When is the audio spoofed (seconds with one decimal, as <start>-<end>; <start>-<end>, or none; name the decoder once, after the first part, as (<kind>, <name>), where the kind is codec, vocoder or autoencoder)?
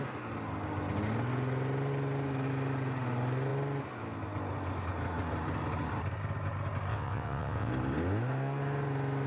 6.9-7.7 (vocoder, WaveNeXt)